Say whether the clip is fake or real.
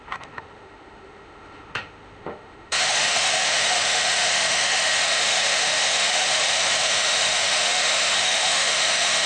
fake